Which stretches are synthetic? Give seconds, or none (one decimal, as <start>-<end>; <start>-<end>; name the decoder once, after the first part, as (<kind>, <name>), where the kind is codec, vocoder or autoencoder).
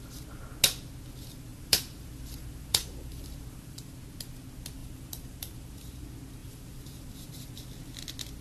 1.5-3.9 (vocoder, BigVGAN v2); 4.8-6.0; 6.4-7.6